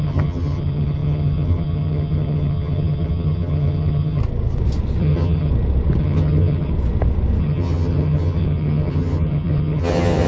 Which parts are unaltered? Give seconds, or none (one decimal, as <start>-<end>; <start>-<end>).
4.2-5.0; 5.5-6.0; 6.7-7.4